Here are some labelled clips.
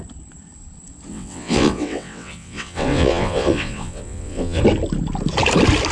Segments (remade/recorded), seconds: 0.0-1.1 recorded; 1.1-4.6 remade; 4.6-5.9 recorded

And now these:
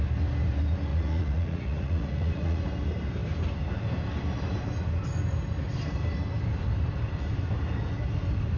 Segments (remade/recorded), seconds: 0.0-0.9 recorded; 0.9-2.6 remade; 2.6-8.6 recorded

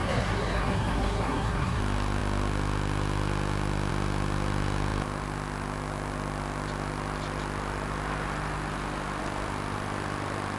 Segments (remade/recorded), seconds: 0.0-1.8 remade; 1.8-10.6 recorded

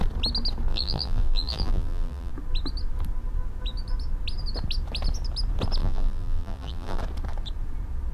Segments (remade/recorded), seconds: 0.0-0.7 recorded; 0.7-2.3 remade; 2.3-5.8 recorded; 5.8-7.0 remade; 7.0-8.1 recorded